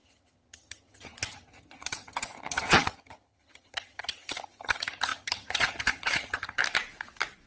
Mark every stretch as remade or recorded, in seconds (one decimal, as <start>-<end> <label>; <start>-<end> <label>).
0.0-6.6 remade; 6.6-7.5 recorded